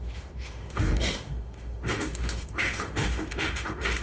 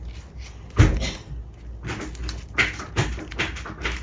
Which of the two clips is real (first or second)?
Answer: second